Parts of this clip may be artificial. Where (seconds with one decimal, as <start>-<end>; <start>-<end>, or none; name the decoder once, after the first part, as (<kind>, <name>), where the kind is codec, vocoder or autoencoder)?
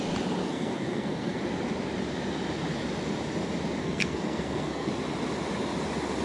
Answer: 0.4-1.4 (codec, SNAC); 3.8-4.9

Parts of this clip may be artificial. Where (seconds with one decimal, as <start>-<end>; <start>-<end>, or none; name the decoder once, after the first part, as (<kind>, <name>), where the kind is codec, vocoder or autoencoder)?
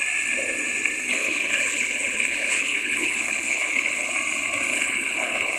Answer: 1.1-4.1 (codec, HILCodec); 4.7-5.6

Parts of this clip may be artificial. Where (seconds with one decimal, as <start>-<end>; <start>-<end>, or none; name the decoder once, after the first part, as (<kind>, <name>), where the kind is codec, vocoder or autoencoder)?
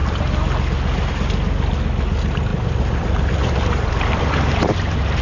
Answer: 2.5-4.7 (vocoder, BigVGAN v2)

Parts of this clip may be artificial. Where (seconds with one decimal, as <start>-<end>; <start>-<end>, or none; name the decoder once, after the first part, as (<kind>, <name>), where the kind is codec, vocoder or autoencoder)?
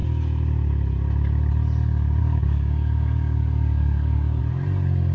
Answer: 2.2-4.4 (codec, DAC)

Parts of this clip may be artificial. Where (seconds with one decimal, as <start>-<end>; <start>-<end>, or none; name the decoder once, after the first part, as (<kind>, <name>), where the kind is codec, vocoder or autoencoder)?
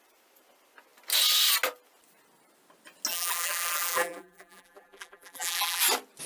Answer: 3.1-5.8 (vocoder, BigVGAN v2)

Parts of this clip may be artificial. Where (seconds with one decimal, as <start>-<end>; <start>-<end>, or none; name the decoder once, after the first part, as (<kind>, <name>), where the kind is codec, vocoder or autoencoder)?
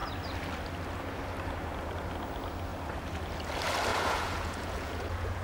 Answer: 3.9-5.4 (vocoder, Vocos)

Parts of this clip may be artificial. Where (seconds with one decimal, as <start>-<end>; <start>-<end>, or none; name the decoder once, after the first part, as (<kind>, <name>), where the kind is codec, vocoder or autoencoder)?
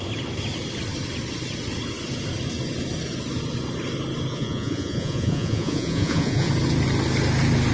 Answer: 4.3-6.5 (vocoder, Vocos)